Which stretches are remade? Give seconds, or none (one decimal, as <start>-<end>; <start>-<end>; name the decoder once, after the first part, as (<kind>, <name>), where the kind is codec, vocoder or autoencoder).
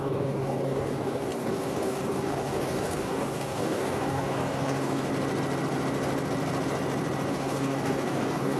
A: 0.0-5.1 (codec, DAC); 7.3-8.6